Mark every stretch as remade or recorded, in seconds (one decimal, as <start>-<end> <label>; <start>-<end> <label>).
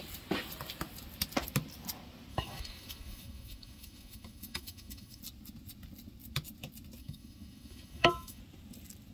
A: 0.0-2.3 recorded; 2.3-5.2 remade; 5.2-7.0 recorded; 7.0-8.4 remade; 8.4-9.1 recorded